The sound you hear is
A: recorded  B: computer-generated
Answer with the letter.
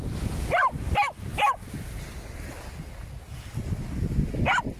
A